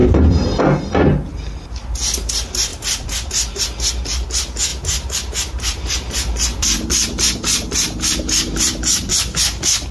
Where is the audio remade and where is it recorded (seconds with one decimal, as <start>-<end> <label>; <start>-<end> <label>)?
0.0-0.6 remade; 0.6-4.7 recorded; 4.7-9.1 remade; 9.1-9.9 recorded